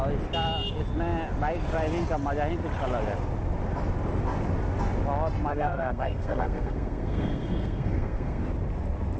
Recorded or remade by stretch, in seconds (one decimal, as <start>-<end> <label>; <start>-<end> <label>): 0.0-5.5 recorded; 5.5-8.4 remade; 8.4-9.2 recorded

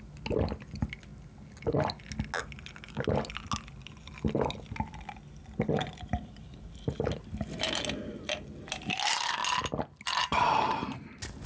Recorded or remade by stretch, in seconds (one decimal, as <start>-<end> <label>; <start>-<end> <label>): 0.0-11.5 recorded

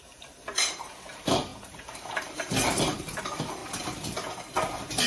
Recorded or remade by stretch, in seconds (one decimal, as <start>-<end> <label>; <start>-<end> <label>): 0.0-3.6 remade; 3.6-5.1 recorded

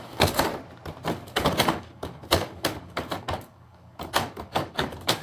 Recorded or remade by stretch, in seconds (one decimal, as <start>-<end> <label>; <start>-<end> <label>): 0.0-0.5 remade; 0.5-1.1 recorded; 1.1-5.2 remade